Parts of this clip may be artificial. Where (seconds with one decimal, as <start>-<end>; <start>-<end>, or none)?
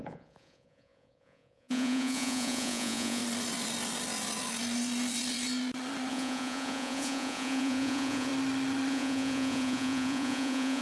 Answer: 0.0-3.2; 6.1-8.3; 8.9-10.8